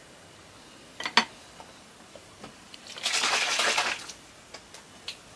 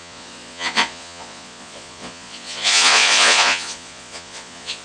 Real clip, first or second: first